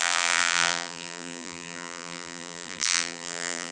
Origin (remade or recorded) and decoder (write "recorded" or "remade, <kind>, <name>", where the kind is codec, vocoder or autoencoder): remade, vocoder, BigVGAN v2